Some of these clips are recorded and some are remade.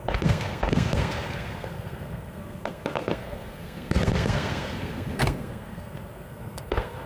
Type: remade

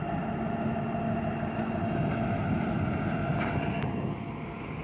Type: recorded